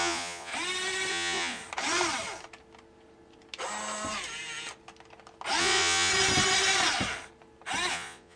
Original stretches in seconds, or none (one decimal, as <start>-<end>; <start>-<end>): 0.5-1.1; 1.6-5.6; 6.1-7.9